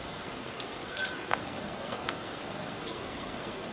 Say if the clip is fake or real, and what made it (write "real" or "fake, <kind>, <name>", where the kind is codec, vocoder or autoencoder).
fake, codec, SNAC